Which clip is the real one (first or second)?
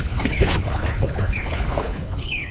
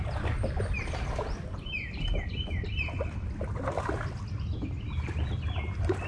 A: second